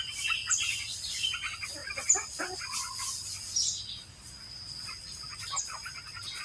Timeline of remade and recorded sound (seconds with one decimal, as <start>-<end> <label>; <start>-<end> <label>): 0.0-6.4 recorded